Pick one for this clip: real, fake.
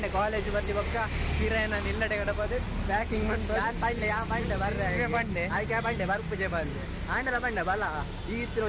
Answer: real